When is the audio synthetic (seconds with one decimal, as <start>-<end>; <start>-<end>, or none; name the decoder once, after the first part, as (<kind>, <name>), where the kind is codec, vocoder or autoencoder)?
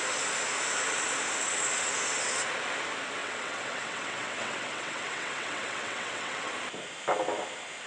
3.2-6.5 (vocoder, WaveNeXt)